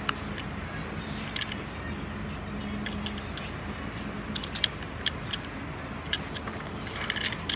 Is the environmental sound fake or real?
real